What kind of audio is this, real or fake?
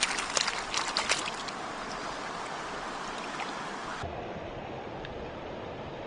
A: real